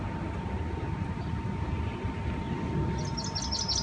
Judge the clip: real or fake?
real